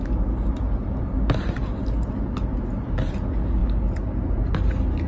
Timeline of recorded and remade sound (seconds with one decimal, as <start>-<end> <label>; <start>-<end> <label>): 0.0-5.1 recorded